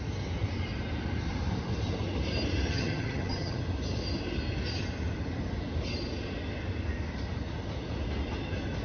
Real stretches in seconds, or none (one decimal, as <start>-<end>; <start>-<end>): 0.0-2.7; 3.6-8.8